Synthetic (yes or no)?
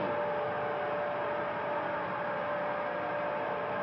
no